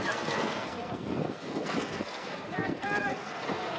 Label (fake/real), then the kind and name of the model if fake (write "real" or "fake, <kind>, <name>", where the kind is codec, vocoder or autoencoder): fake, codec, SNAC